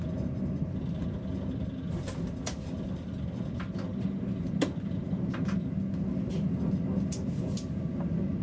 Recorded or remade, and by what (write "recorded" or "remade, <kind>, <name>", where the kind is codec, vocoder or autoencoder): recorded